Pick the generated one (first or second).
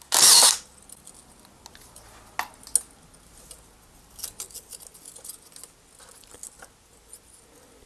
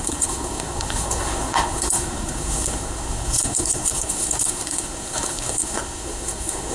second